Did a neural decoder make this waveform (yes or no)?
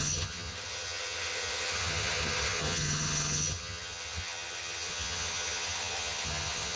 yes